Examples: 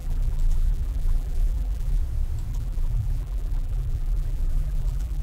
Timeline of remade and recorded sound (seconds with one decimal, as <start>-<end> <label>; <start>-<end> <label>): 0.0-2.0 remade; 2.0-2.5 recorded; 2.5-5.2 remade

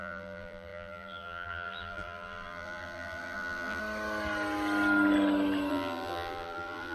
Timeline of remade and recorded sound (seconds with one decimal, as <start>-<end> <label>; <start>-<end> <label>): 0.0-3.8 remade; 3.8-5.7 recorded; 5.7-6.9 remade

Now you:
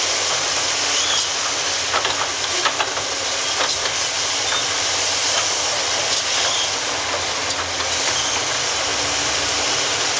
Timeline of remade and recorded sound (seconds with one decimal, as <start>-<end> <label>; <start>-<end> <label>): 0.0-10.2 recorded

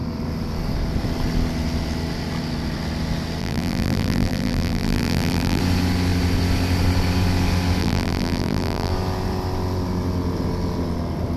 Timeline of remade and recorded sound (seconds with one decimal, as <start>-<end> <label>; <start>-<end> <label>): 0.0-3.4 recorded; 3.4-5.6 remade; 5.6-7.8 recorded; 7.8-8.9 remade; 8.9-11.4 recorded